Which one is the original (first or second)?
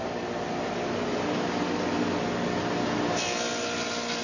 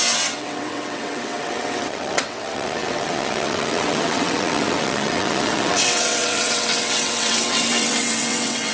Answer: first